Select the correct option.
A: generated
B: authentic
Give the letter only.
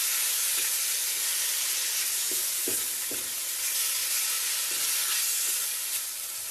B